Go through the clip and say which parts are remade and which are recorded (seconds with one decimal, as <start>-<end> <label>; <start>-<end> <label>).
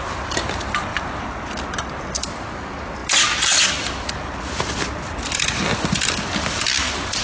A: 0.0-7.2 recorded